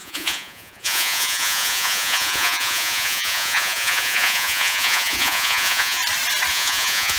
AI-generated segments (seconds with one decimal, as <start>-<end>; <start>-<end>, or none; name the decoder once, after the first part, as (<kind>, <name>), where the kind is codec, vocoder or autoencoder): 0.0-6.0 (vocoder, Vocos); 6.5-7.2